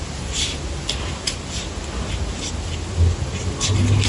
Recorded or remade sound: recorded